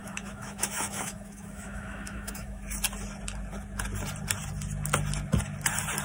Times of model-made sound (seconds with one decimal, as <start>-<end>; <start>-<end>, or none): 0.0-2.6